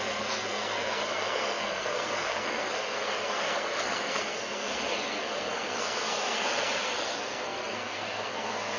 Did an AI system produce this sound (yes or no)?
yes